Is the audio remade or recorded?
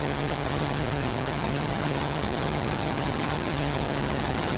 remade